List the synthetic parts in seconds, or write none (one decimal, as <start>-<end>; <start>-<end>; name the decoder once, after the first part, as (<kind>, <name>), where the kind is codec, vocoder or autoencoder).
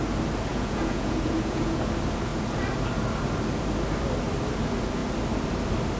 0.5-1.8 (vocoder, Vocos)